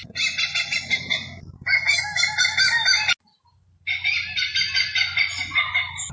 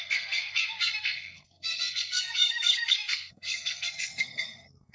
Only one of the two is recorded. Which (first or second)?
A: first